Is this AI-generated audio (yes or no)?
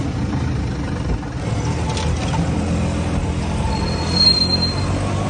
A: no